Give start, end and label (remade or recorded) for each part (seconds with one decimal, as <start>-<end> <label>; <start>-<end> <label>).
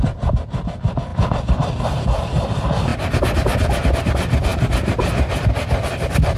0.0-6.4 recorded